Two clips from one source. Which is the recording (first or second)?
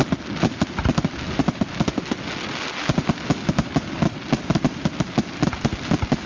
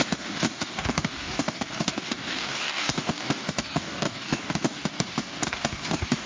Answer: first